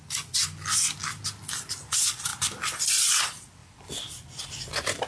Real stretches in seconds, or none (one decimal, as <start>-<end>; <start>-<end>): 0.0-2.3; 3.1-3.6; 4.6-5.1